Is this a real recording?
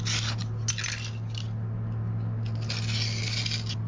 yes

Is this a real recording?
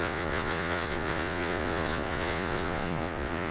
no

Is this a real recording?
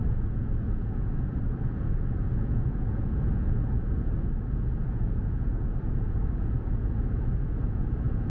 no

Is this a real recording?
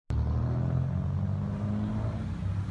yes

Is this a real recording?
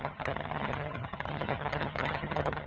no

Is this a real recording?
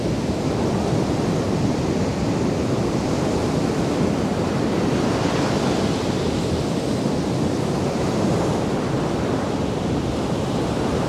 yes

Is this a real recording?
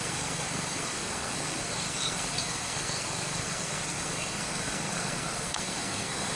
no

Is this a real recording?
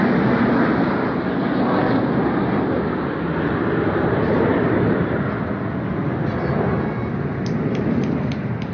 yes